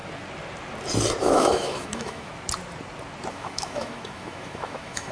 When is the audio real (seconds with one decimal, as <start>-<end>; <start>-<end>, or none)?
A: 0.0-1.2; 2.3-3.3